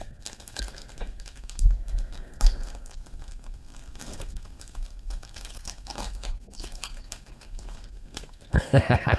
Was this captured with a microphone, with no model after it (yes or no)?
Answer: no